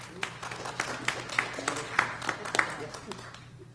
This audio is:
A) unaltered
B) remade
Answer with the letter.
A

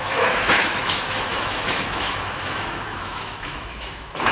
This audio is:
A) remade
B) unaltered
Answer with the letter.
A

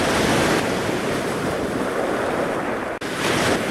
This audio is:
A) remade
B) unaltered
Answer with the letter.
B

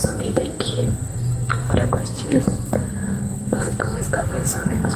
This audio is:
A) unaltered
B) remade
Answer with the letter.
B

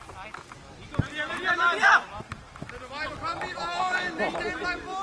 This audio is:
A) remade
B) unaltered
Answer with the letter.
B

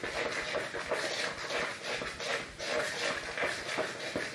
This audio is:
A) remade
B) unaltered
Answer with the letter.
B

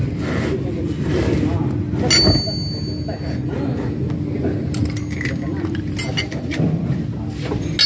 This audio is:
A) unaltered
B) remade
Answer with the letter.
A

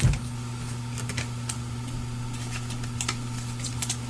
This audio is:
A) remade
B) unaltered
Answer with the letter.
B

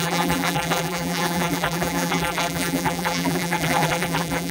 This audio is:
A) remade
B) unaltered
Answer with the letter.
A